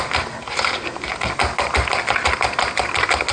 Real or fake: real